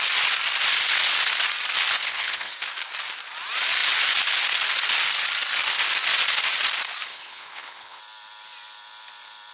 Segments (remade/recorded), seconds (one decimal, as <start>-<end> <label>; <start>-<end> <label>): 0.0-2.0 recorded; 2.0-2.5 remade; 2.5-7.1 recorded; 7.1-8.0 remade; 8.0-9.5 recorded